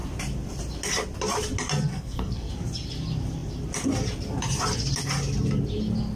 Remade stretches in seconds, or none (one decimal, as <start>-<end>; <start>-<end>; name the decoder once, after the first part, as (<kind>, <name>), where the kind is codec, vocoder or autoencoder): 1.9-2.5 (codec, SNAC)